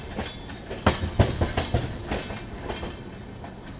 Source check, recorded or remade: recorded